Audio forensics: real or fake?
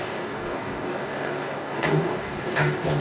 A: fake